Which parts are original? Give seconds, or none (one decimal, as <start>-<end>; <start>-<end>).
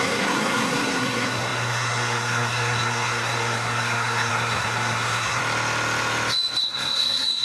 5.4-6.6